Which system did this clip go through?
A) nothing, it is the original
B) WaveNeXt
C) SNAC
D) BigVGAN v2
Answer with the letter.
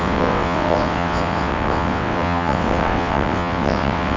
B